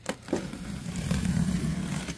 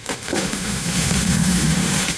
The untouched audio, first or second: first